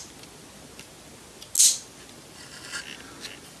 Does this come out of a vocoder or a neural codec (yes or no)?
no